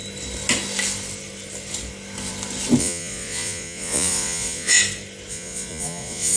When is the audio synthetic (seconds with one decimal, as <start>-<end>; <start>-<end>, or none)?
2.8-4.8; 5.3-6.4